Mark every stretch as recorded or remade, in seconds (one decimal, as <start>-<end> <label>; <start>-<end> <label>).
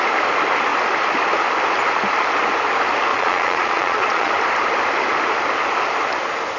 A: 0.0-3.1 recorded; 3.1-4.3 remade; 4.3-6.6 recorded